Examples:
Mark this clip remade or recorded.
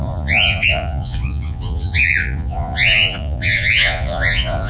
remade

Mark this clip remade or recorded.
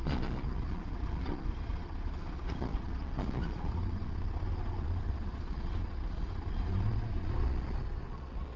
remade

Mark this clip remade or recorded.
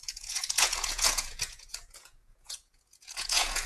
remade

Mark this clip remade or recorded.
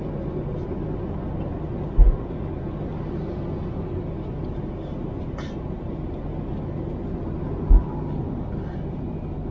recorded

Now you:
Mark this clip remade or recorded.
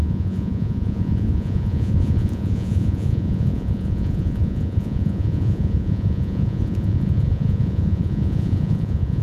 remade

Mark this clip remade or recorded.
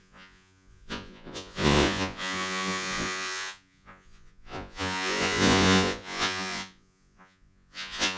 remade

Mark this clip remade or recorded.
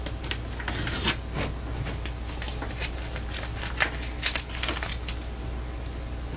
recorded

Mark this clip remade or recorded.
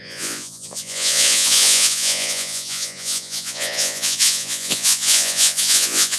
remade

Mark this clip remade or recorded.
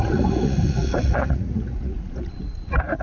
remade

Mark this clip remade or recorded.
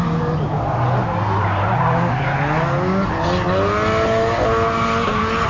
recorded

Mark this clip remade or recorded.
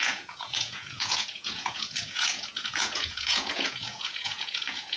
remade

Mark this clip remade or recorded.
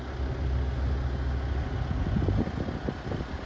recorded